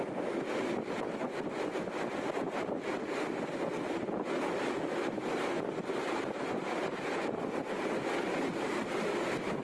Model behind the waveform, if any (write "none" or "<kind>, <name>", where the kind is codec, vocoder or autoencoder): none